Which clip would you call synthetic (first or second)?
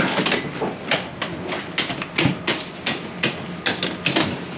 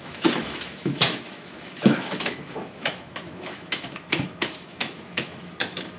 second